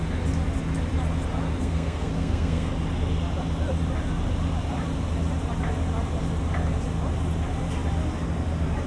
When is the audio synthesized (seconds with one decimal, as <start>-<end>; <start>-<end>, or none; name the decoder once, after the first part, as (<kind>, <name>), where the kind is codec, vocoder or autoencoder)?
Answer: 1.6-2.7 (codec, SNAC)